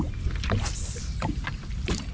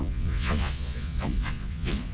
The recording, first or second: first